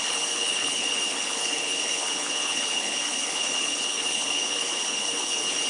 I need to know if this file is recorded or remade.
remade